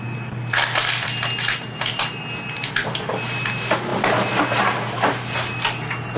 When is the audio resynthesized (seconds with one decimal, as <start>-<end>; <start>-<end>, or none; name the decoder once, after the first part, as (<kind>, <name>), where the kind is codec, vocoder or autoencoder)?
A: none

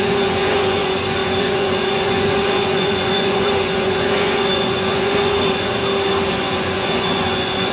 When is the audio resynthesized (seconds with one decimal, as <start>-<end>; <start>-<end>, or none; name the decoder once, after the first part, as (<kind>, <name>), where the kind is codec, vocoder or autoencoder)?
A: 0.0-5.8 (vocoder, Vocos); 6.3-7.7

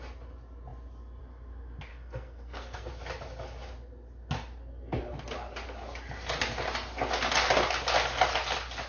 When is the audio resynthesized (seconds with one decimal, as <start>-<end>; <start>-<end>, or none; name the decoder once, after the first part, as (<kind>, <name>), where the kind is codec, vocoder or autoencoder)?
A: 1.9-2.9 (codec, SNAC)

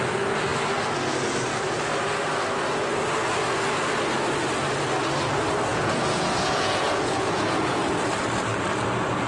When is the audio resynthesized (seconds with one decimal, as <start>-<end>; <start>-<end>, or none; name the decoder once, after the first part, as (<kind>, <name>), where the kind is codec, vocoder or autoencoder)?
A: 5.7-7.8 (vocoder, Vocos)

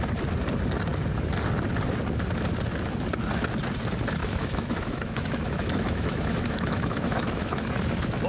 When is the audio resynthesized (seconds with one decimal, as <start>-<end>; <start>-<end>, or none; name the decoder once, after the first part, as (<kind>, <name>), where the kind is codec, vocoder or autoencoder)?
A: 4.2-7.6 (autoencoder, DAC-VAE)

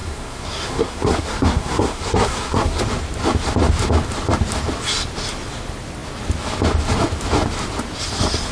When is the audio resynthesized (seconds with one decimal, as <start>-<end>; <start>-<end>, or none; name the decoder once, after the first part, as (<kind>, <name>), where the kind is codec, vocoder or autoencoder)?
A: 0.0-2.8 (codec, SNAC)

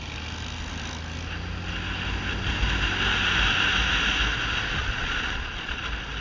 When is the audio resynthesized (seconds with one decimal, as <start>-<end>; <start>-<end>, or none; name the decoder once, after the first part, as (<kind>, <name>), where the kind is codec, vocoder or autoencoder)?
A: 4.8-5.8 (vocoder, Vocos)

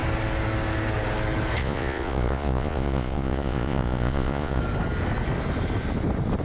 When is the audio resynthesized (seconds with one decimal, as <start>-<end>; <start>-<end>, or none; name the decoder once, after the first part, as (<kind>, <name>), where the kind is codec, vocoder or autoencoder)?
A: 1.6-4.6 (vocoder, Vocos)